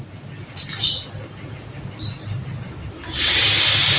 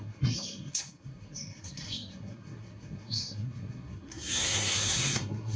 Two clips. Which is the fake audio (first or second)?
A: second